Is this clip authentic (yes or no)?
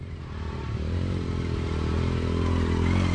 yes